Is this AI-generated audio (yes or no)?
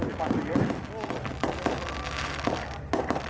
no